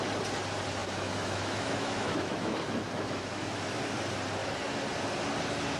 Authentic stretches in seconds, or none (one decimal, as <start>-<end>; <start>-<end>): 0.0-0.8; 3.8-5.8